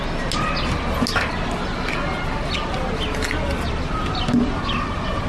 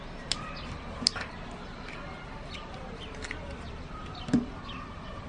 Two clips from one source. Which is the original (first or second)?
first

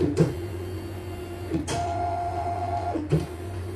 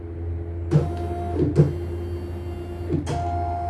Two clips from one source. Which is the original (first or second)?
second